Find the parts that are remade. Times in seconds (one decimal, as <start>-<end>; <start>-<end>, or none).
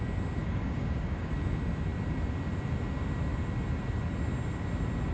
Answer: 0.4-1.3